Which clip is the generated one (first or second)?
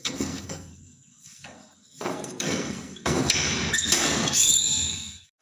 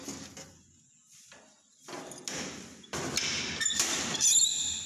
first